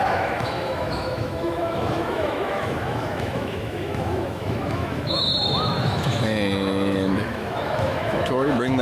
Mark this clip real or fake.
fake